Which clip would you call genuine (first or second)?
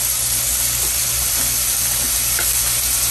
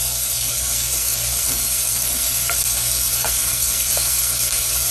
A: first